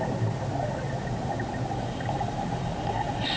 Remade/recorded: recorded